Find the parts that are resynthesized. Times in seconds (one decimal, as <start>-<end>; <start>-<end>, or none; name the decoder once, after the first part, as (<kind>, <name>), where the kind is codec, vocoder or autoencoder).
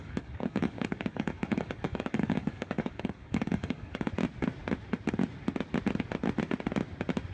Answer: 0.0-4.1 (codec, DAC)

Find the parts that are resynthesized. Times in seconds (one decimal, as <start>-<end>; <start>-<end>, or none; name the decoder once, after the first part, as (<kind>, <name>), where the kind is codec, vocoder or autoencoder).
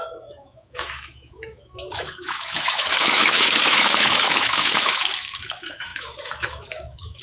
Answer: 0.0-7.2 (autoencoder, DAC-VAE)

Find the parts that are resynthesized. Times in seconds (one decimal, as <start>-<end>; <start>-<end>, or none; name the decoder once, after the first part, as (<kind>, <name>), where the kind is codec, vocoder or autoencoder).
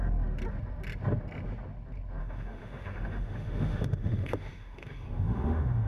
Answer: 2.2-5.9 (autoencoder, DAC-VAE)